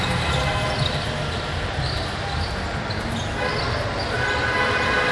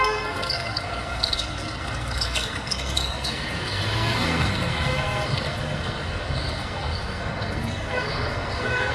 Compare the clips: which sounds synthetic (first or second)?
second